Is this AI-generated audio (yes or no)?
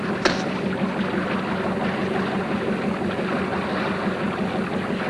no